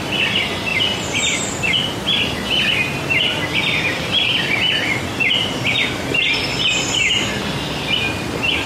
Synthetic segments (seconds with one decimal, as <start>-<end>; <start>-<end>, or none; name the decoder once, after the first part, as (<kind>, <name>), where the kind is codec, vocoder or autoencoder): none